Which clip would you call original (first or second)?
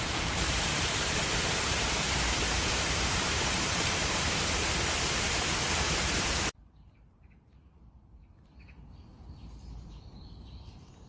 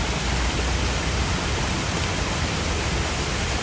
second